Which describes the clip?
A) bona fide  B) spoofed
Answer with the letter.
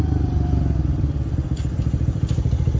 A